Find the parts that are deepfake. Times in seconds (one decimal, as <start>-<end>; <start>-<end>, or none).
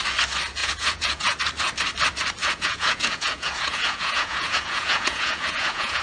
0.6-1.4; 2.4-6.0